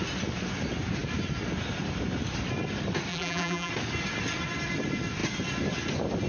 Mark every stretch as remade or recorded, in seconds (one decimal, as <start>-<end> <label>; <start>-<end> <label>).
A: 0.0-3.1 recorded; 3.1-3.7 remade; 3.7-6.3 recorded